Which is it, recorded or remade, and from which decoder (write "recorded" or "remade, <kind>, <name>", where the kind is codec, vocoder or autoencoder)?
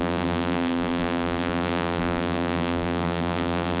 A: remade, vocoder, BigVGAN v2